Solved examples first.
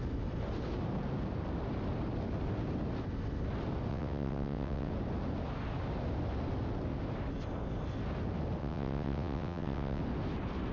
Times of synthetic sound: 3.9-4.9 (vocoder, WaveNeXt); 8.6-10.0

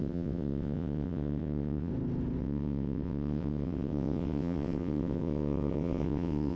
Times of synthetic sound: 0.0-1.9 (vocoder, WaveNeXt); 2.4-6.6

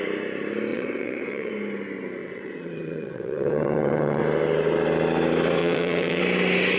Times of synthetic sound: 0.7-1.5 (vocoder, WaveNeXt); 2.2-4.2; 5.6-6.2

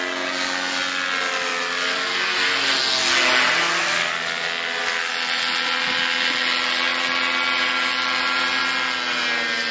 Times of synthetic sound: none

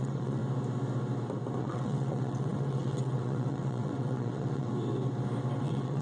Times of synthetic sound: 0.0-0.4 (vocoder, WaveNeXt); 1.6-4.7; 5.6-6.0

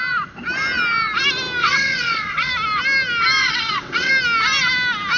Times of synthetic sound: 1.6-2.5 (vocoder, WaveNeXt); 3.4-4.1